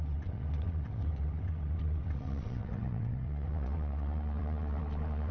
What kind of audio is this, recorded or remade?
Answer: remade